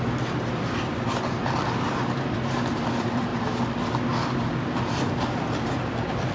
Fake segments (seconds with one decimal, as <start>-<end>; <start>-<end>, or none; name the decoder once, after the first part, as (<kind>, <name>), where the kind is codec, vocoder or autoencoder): none